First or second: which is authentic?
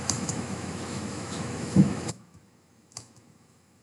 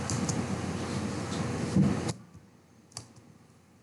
second